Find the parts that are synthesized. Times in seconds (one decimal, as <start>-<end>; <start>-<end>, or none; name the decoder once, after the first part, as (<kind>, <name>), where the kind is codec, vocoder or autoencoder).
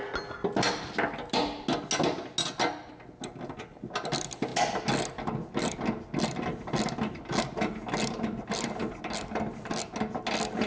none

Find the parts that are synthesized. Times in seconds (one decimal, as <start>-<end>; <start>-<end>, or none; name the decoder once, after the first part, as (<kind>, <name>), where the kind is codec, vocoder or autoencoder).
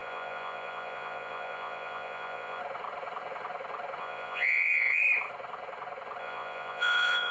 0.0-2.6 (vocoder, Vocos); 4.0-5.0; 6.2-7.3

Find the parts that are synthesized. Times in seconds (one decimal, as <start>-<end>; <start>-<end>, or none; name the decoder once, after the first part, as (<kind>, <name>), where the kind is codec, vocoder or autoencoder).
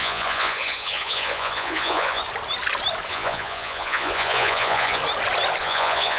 0.0-2.2 (vocoder, Vocos); 3.1-5.0; 5.6-6.2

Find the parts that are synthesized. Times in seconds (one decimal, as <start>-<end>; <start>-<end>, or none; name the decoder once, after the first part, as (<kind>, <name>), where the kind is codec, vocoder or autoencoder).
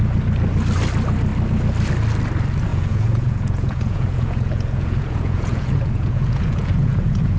2.7-7.4 (vocoder, Vocos)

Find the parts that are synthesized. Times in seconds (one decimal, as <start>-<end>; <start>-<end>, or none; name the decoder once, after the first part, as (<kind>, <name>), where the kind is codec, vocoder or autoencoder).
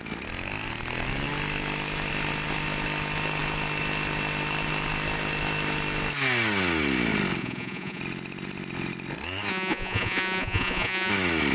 7.4-8.0 (vocoder, Vocos); 9.5-11.1